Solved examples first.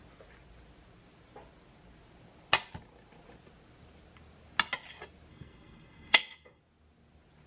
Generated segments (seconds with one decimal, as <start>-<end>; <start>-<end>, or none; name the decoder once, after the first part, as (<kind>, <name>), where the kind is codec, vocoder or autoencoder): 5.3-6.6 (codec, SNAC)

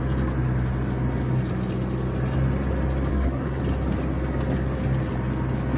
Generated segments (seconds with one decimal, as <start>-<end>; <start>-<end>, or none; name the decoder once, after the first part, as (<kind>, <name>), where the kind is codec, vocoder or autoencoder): 3.1-3.6 (codec, SNAC)

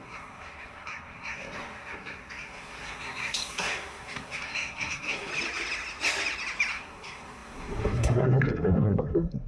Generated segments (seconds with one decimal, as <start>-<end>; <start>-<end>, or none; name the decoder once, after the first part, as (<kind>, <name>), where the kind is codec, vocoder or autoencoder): 0.0-5.3 (codec, SNAC); 6.7-9.5

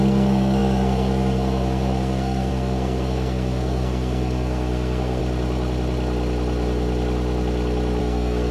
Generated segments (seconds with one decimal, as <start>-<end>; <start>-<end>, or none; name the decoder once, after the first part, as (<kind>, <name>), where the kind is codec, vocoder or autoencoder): 0.0-5.2 (codec, SNAC); 8.0-8.5